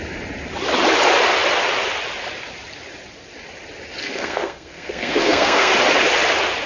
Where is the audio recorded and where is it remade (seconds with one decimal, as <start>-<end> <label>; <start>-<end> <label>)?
0.0-4.0 recorded; 4.0-5.7 remade; 5.7-6.7 recorded